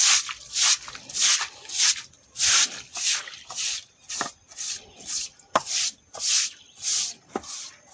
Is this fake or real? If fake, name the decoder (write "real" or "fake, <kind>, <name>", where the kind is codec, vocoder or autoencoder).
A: real